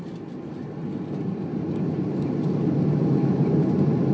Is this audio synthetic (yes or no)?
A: no